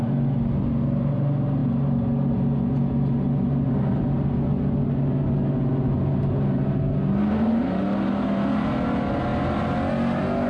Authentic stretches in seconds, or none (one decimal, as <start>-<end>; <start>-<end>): 0.0-10.5